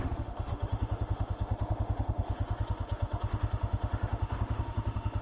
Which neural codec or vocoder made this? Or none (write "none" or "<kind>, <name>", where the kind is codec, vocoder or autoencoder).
autoencoder, DAC-VAE